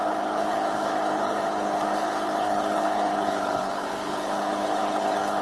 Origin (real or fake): fake